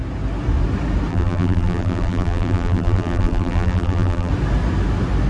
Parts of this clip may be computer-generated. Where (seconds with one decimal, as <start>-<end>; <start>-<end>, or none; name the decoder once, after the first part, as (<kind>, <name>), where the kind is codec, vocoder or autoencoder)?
1.1-4.3 (vocoder, BigVGAN v2)